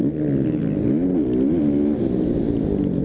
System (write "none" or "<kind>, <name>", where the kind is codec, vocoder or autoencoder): none